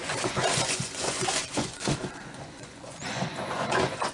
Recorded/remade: remade